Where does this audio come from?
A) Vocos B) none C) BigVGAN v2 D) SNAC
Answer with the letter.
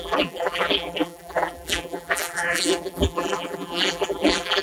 C